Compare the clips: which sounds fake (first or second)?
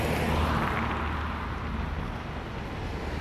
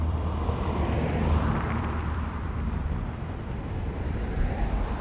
second